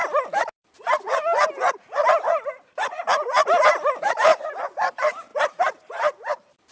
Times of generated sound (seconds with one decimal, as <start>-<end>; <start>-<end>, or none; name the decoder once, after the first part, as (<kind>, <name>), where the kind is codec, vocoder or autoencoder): 4.0-5.3 (vocoder, BigVGAN v2); 5.9-6.7